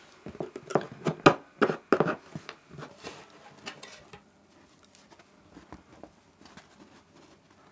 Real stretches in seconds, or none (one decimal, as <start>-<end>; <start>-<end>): 0.0-7.7